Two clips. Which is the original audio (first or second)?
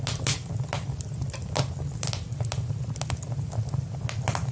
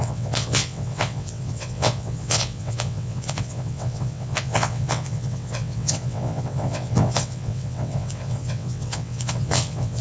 first